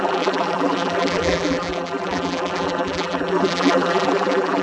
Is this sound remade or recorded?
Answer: remade